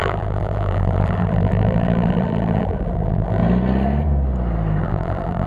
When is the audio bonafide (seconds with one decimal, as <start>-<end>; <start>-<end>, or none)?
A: 3.4-4.8